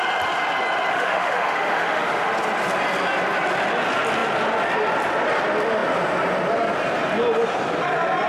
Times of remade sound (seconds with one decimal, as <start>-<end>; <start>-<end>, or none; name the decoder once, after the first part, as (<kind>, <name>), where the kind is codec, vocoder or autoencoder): 0.9-2.3 (autoencoder, DAC-VAE)